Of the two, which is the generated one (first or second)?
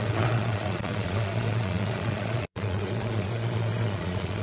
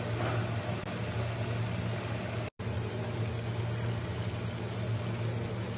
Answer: first